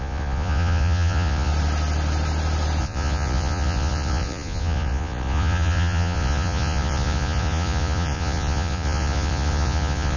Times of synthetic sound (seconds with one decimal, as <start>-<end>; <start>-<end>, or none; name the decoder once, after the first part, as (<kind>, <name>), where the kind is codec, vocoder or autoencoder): 0.0-1.5 (vocoder, Vocos); 2.8-10.2